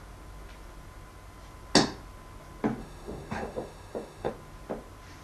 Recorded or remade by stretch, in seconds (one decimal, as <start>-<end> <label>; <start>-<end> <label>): 0.0-2.8 recorded; 2.8-4.3 remade; 4.3-5.2 recorded